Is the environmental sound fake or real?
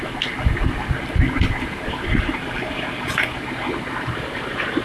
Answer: real